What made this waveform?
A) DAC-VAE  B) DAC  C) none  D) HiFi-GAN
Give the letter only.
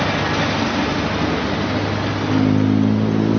C